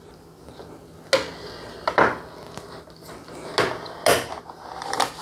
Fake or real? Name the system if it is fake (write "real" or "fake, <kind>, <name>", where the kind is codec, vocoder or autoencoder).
real